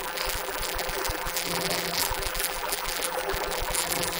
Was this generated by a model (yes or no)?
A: yes